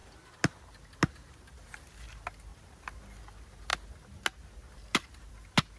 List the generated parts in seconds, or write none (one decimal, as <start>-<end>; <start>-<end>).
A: none